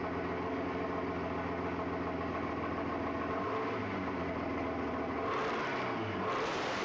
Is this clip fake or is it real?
real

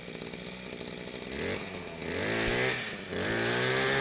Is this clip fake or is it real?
real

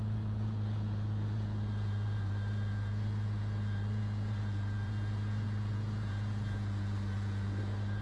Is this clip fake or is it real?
fake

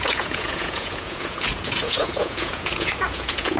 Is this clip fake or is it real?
fake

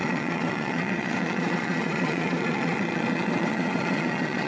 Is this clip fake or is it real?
fake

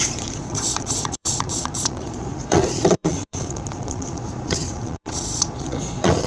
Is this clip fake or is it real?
fake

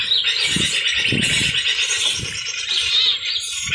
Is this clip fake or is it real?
real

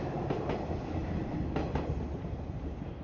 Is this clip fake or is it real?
real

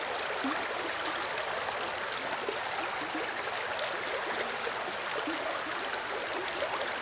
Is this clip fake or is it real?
real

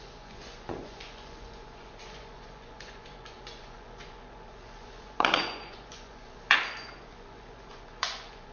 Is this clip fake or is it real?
fake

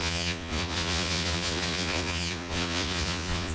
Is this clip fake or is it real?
fake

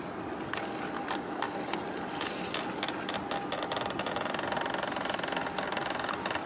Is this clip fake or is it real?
real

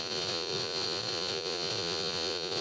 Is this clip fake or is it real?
fake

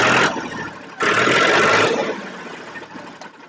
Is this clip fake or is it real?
real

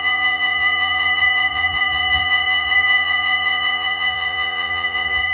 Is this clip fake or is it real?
fake